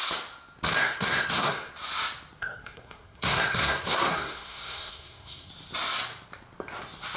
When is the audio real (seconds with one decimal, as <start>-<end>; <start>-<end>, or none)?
0.0-0.8; 1.7-2.4; 5.5-7.2